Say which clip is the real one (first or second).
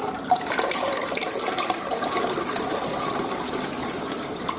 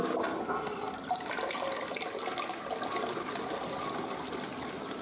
second